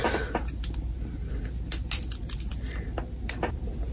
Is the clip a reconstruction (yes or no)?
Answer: no